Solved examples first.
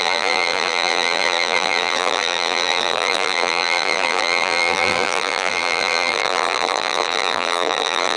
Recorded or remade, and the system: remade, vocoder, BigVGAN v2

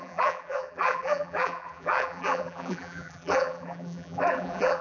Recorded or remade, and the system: remade, vocoder, BigVGAN v2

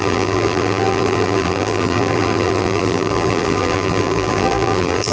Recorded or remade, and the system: remade, vocoder, BigVGAN v2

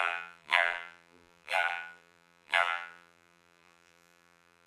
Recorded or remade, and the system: remade, vocoder, BigVGAN v2